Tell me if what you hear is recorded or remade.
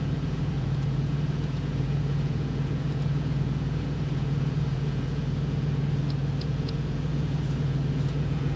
remade